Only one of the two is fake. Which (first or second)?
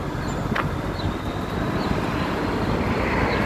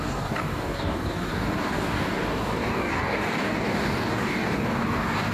second